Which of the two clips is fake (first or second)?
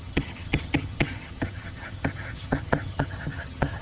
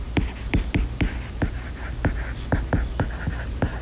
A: first